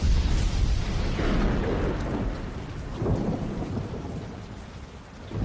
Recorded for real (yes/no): yes